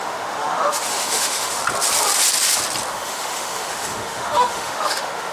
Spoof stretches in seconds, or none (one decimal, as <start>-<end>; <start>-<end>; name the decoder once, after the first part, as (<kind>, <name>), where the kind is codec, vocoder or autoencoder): 0.0-1.6 (autoencoder, DAC-VAE); 2.9-5.3